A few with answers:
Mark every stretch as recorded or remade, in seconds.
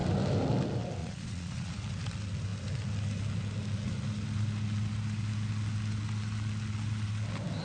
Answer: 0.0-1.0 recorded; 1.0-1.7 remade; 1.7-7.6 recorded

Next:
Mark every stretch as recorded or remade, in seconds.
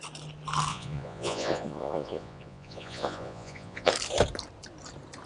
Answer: 0.0-0.7 recorded; 0.7-3.9 remade; 3.9-5.3 recorded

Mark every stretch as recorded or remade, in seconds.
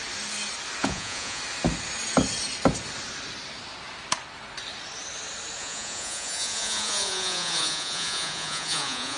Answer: 0.0-0.8 recorded; 0.8-1.4 remade; 1.4-5.6 recorded; 5.6-9.2 remade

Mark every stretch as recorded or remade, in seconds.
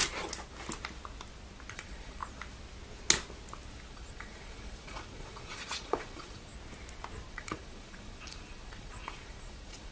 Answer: 0.0-1.7 recorded; 1.7-2.2 remade; 2.2-3.9 recorded; 3.9-6.5 remade; 6.5-7.3 recorded; 7.3-9.9 remade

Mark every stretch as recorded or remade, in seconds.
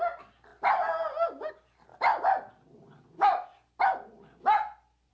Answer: 0.0-5.1 recorded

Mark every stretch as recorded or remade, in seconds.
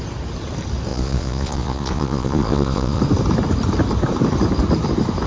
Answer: 0.0-0.9 recorded; 0.9-3.0 remade; 3.0-5.3 recorded